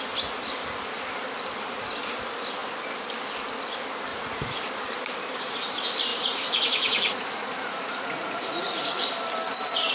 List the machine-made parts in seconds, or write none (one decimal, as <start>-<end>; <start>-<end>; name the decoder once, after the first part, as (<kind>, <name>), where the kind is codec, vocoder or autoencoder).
4.1-4.7 (vocoder, Vocos); 6.1-9.0